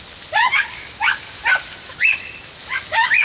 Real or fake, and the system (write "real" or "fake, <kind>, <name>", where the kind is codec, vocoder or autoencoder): real